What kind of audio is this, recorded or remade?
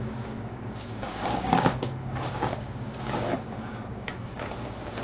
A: remade